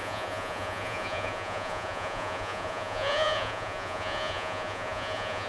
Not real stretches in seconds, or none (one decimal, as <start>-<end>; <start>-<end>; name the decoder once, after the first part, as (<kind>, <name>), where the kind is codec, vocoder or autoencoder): 0.0-5.5 (vocoder, Vocos)